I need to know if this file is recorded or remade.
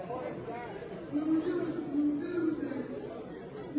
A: remade